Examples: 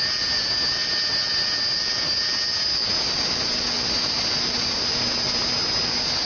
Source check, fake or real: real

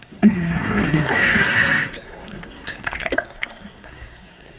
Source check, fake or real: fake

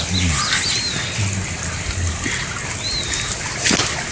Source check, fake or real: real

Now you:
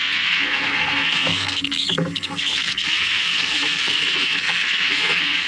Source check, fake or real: fake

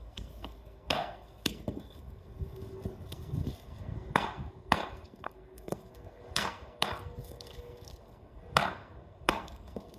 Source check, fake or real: fake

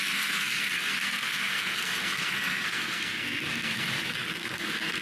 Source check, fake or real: fake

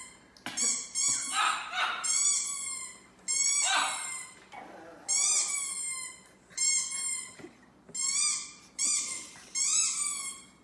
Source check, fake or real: real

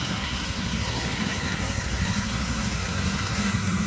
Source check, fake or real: fake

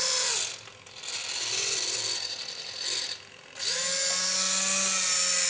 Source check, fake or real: real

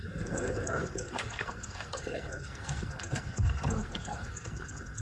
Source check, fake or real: fake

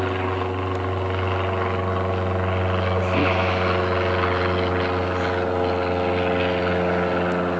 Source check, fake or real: real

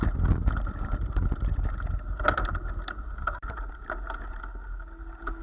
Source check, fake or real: real